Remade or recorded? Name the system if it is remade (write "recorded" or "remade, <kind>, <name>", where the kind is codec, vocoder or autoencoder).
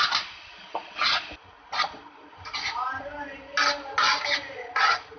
recorded